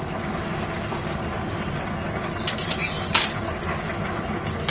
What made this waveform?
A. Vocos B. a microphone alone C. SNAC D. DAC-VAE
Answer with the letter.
B